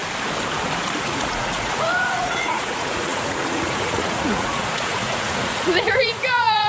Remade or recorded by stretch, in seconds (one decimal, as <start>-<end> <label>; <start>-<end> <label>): 0.0-1.0 recorded; 1.0-6.7 remade